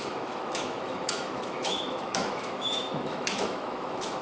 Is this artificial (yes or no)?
yes